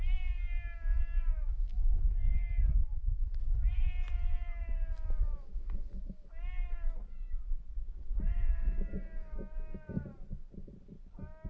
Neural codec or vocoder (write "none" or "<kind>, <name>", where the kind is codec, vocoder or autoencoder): none